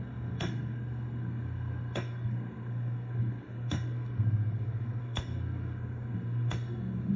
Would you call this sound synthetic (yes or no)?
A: yes